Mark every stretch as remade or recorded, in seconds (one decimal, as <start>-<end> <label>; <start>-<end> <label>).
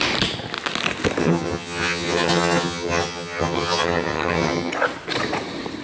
0.0-1.2 recorded; 1.2-4.7 remade; 4.7-5.8 recorded